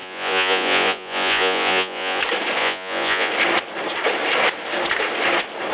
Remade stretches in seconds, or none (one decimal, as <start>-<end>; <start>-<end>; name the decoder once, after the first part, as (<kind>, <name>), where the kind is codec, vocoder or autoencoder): 0.0-2.2 (vocoder, Vocos); 2.6-3.3